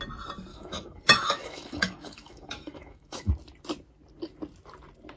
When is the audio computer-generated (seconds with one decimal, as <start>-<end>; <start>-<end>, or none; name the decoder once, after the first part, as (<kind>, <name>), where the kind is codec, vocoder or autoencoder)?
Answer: 0.5-3.3 (autoencoder, DAC-VAE)